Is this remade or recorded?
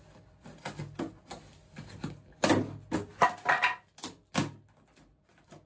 recorded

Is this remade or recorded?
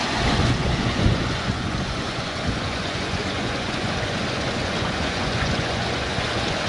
remade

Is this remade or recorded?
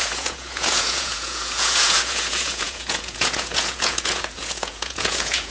remade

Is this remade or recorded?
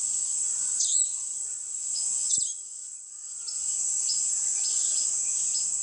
remade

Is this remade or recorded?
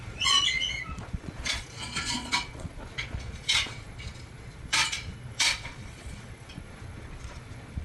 remade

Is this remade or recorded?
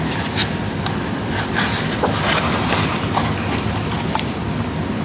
recorded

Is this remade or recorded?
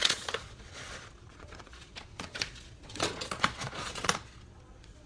remade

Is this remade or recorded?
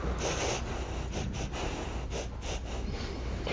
recorded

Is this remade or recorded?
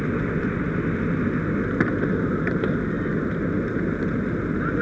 recorded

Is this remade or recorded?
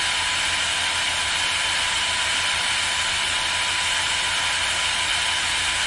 recorded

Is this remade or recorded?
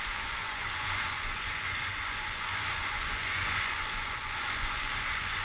remade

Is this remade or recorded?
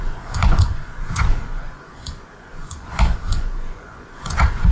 remade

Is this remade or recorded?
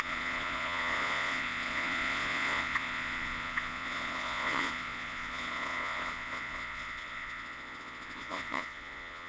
remade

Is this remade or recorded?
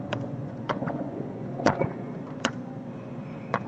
remade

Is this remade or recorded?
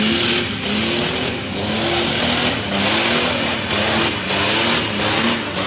recorded